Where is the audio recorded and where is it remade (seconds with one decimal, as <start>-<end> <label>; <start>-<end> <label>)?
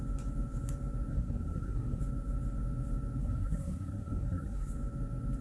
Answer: 0.0-1.1 recorded; 1.1-2.0 remade; 2.0-3.2 recorded; 3.2-4.7 remade; 4.7-5.4 recorded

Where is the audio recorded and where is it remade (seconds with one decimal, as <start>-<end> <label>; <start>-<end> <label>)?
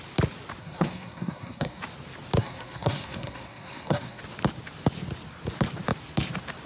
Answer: 0.0-0.6 recorded; 0.6-1.8 remade; 1.8-2.4 recorded; 2.4-4.2 remade; 4.2-6.7 recorded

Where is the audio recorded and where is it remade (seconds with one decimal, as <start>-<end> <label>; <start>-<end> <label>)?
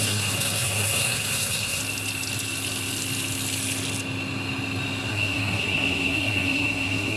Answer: 0.0-1.8 remade; 1.8-5.1 recorded; 5.1-7.2 remade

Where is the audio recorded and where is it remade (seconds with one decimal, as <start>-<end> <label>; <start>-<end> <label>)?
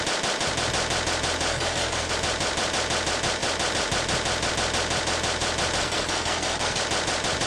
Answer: 0.0-1.5 recorded; 1.5-2.1 remade; 2.1-5.8 recorded; 5.8-6.8 remade; 6.8-7.5 recorded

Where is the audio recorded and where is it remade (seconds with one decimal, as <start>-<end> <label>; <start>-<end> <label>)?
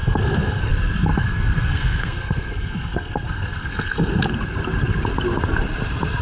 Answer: 0.0-0.7 remade; 0.7-1.1 recorded; 1.1-4.2 remade; 4.2-6.2 recorded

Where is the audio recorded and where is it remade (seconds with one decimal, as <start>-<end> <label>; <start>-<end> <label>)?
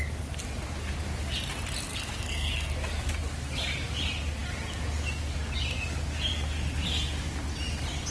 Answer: 0.0-1.9 recorded; 1.9-2.7 remade; 2.7-8.1 recorded